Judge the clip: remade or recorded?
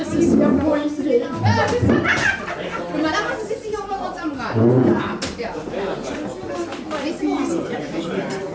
recorded